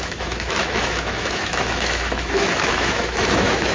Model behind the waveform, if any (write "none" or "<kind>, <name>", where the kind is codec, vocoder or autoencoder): autoencoder, DAC-VAE